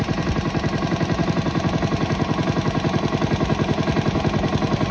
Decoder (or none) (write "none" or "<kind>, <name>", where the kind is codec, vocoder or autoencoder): none